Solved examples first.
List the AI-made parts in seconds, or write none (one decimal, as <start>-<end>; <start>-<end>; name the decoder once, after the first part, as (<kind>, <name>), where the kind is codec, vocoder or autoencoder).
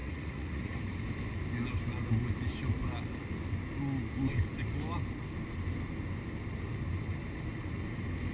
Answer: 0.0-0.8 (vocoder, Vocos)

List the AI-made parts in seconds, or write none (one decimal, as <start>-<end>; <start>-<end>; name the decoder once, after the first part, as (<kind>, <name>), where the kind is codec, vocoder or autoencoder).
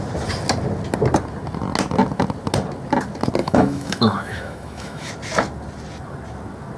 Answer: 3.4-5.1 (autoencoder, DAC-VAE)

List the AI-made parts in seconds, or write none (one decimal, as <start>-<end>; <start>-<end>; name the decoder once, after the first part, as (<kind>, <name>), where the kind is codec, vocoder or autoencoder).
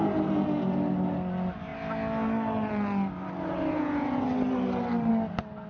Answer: none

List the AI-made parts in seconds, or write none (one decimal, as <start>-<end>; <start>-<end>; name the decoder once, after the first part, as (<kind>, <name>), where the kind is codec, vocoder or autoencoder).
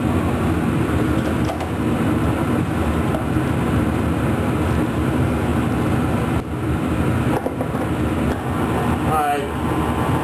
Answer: 5.5-6.2 (vocoder, BigVGAN v2)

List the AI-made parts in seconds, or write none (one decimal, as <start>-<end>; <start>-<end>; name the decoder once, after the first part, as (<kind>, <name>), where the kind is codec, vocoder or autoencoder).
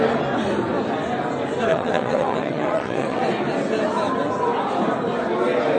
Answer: 1.7-3.2 (vocoder, WaveNeXt)